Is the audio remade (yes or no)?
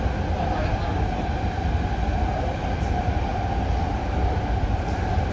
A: no